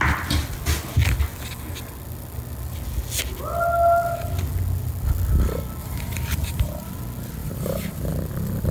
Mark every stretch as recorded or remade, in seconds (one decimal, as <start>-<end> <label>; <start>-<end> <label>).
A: 0.0-5.8 recorded; 5.8-6.6 remade; 6.6-7.4 recorded; 7.4-8.1 remade; 8.1-8.7 recorded